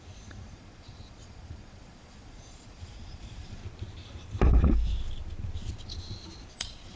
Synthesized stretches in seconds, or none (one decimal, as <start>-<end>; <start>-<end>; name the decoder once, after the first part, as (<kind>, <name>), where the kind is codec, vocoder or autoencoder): 0.0-3.6 (vocoder, Vocos); 6.5-7.0